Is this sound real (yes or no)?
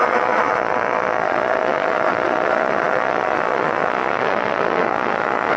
no